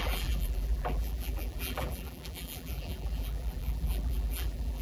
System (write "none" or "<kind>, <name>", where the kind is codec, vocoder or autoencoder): vocoder, BigVGAN v2